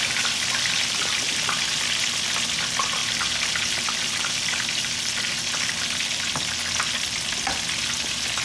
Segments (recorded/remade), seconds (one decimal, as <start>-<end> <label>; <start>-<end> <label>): 0.0-8.4 recorded